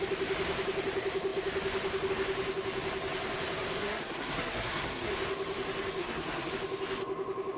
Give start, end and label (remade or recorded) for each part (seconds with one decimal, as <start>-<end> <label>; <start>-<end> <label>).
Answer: 0.0-3.8 recorded; 3.8-5.1 remade; 5.1-6.0 recorded; 6.0-6.5 remade; 6.5-7.6 recorded